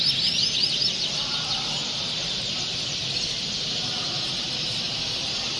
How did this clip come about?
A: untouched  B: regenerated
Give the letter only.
A